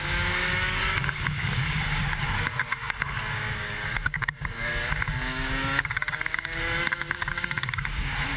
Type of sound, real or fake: fake